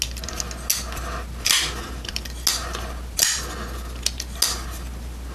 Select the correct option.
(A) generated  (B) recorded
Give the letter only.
B